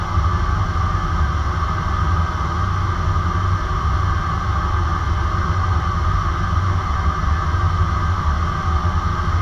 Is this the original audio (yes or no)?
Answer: yes